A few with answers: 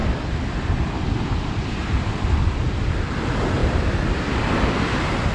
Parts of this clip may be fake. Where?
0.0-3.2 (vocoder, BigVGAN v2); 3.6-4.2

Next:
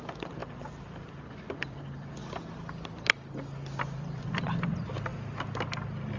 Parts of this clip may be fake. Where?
0.0-2.2 (vocoder, BigVGAN v2); 3.3-6.2

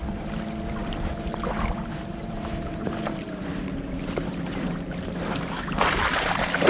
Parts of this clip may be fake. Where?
0.8-4.7 (vocoder, BigVGAN v2)

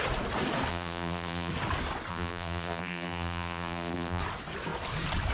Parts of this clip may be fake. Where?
0.7-1.5 (vocoder, BigVGAN v2); 2.1-4.2